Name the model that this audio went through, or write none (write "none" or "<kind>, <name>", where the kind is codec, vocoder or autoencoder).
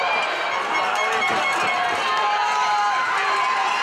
none